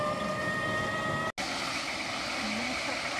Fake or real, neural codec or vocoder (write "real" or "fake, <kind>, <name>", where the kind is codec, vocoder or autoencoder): real